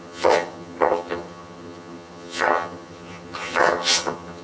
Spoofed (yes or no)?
yes